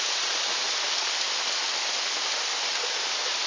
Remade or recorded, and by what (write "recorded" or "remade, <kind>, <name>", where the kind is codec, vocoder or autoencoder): recorded